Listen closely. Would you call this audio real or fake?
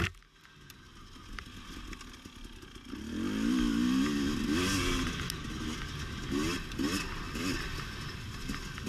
real